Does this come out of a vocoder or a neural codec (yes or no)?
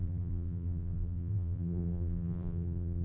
yes